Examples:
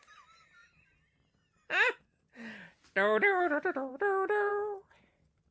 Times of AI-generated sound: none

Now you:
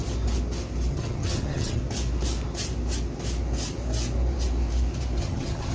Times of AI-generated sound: 0.9-1.8 (vocoder, HiFi-GAN); 5.2-5.7

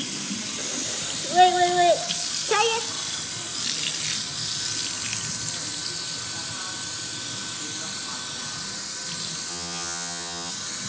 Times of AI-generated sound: 9.5-10.5 (vocoder, HiFi-GAN)

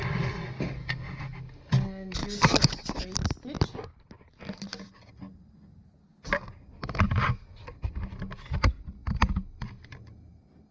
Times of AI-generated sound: none

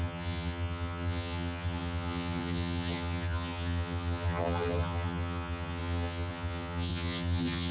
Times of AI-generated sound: 0.0-7.7 (vocoder, HiFi-GAN)

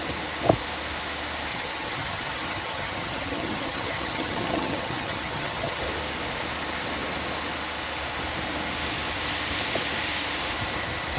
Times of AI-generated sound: 1.5-5.8 (vocoder, HiFi-GAN)

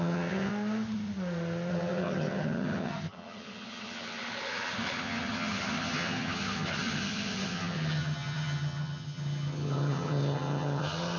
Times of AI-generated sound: 0.0-0.5 (vocoder, HiFi-GAN); 1.7-11.2

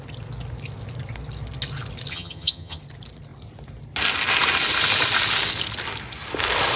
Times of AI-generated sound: 2.1-2.8 (vocoder, HiFi-GAN)